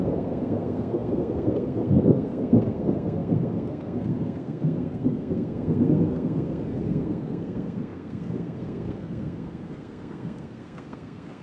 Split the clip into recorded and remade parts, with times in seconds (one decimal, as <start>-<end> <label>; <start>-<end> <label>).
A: 0.0-11.4 remade